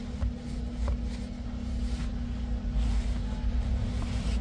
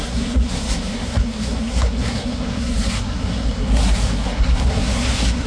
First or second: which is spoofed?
second